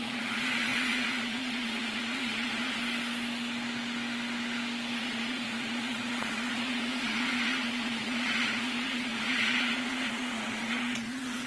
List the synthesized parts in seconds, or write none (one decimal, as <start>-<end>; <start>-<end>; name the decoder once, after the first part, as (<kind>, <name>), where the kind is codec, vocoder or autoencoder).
0.0-2.8 (vocoder, Vocos); 5.0-11.5